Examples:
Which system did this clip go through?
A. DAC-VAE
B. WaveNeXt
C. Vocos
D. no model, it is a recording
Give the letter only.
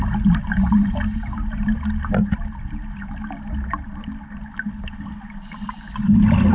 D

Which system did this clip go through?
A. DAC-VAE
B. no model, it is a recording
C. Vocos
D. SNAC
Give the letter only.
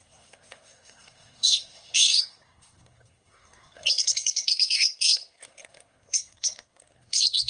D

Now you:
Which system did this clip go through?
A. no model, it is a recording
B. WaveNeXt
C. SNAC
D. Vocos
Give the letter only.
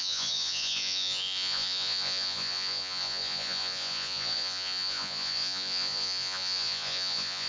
D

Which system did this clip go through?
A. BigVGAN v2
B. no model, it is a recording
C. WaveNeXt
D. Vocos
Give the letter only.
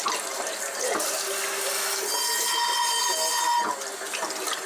B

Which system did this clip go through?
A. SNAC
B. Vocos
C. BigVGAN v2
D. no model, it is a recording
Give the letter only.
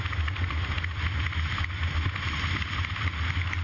D